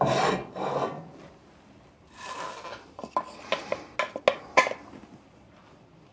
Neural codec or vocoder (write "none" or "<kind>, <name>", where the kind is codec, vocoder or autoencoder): none